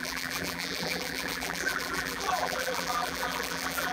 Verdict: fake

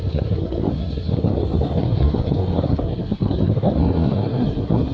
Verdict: fake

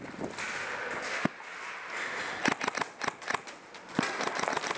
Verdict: real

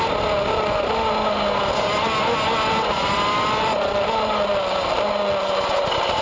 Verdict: real